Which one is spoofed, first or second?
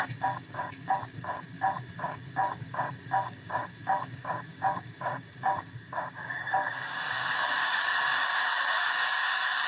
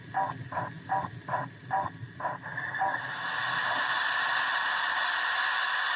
first